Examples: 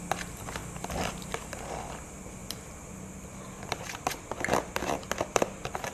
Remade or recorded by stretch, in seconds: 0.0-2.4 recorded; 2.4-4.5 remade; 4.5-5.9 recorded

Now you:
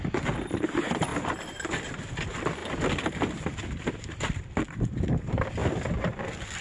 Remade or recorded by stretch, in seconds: 0.0-1.1 recorded; 1.1-2.1 remade; 2.1-2.6 recorded; 2.6-4.4 remade; 4.4-5.6 recorded; 5.6-6.6 remade

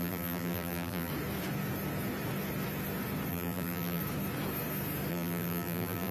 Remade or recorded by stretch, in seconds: 0.0-1.1 remade; 1.1-3.3 recorded; 3.3-4.0 remade; 4.0-5.1 recorded; 5.1-6.1 remade

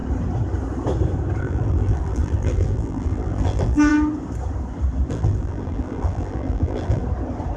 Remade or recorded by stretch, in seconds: 0.0-1.4 recorded; 1.4-3.9 remade; 3.9-5.1 recorded; 5.1-7.0 remade; 7.0-7.6 recorded

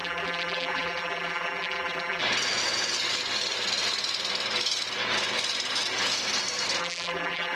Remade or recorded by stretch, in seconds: 0.0-2.2 remade; 2.2-6.8 recorded; 6.8-7.6 remade

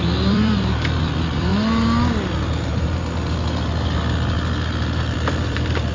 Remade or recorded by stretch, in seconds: 0.0-1.5 remade; 1.5-5.0 recorded; 5.0-5.9 remade